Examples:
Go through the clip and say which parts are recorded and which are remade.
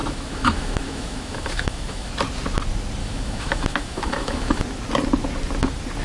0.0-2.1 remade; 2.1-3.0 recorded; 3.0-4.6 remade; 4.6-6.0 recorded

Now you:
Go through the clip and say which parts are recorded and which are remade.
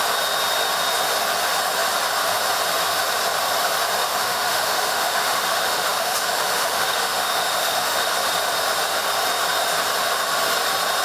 0.0-4.1 recorded; 4.1-8.1 remade; 8.1-11.0 recorded